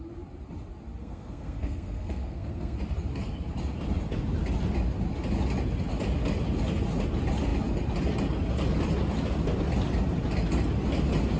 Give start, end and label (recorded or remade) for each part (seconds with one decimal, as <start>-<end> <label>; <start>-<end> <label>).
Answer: 0.0-1.0 recorded; 1.0-2.8 remade; 2.8-11.4 recorded